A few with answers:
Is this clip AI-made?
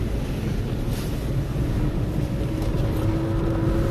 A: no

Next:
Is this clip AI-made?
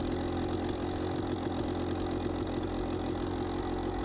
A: no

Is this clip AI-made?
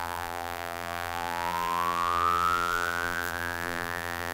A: yes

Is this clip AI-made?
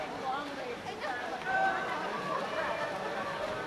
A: yes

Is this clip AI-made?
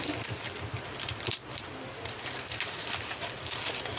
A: no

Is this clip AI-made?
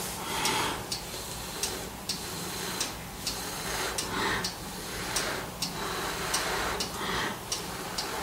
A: no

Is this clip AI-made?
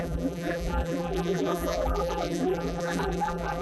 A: yes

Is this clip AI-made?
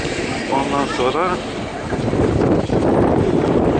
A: yes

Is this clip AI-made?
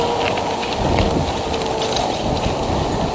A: no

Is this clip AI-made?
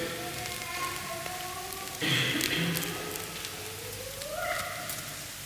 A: no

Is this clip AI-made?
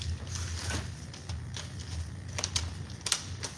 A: no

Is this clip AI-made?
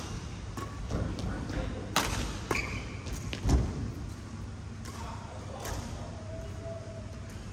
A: no